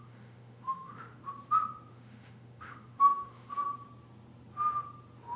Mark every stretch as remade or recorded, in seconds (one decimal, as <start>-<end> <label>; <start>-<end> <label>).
0.0-1.2 remade; 1.2-1.9 recorded; 1.9-3.7 remade; 3.7-5.4 recorded